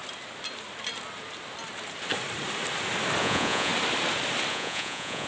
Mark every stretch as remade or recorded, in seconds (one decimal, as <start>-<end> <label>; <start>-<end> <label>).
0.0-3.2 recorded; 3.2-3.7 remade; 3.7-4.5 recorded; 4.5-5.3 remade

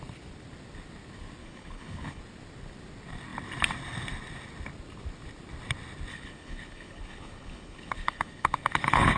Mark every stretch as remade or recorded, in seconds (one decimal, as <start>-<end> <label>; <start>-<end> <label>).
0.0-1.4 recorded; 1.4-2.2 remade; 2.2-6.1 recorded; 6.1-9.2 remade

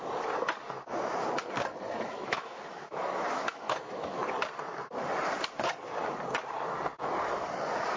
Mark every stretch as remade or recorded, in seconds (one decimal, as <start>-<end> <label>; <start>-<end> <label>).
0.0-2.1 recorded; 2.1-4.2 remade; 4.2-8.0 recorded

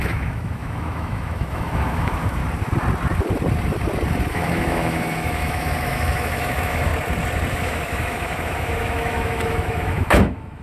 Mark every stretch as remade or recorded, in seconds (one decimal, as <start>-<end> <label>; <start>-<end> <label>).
0.0-2.4 remade; 2.4-4.3 recorded; 4.3-6.9 remade; 6.9-7.5 recorded; 7.5-10.6 remade

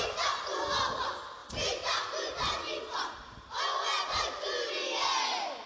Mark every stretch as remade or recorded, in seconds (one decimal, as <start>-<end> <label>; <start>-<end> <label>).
0.0-5.7 recorded